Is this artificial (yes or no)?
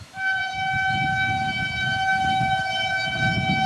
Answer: yes